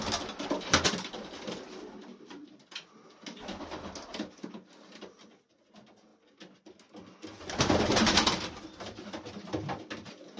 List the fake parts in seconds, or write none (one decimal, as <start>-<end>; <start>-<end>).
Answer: 2.0-2.6